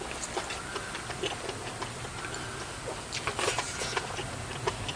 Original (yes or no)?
yes